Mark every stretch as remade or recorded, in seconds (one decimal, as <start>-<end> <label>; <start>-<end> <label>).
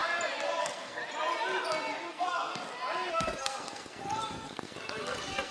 0.0-0.6 recorded; 0.6-1.0 remade; 1.0-2.1 recorded; 2.1-2.5 remade; 2.5-3.1 recorded; 3.1-5.5 remade